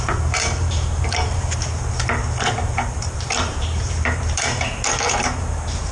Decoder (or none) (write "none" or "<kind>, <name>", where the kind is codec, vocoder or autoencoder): vocoder, BigVGAN v2